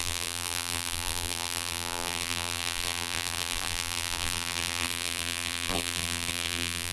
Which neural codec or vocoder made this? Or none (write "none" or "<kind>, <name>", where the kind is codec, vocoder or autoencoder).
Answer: vocoder, BigVGAN v2